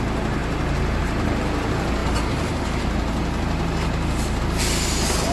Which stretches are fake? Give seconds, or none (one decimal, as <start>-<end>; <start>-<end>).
none